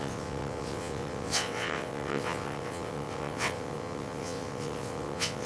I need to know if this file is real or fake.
fake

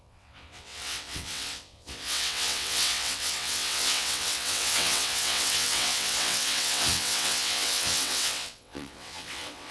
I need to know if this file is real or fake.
fake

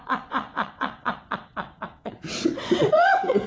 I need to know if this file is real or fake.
fake